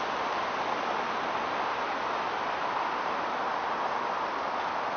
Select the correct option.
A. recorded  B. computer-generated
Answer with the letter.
A